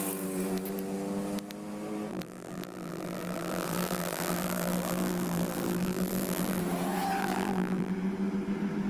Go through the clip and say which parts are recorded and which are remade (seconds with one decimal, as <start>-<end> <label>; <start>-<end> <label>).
0.0-2.1 recorded; 2.1-6.6 remade; 6.6-7.2 recorded; 7.2-7.9 remade; 7.9-8.9 recorded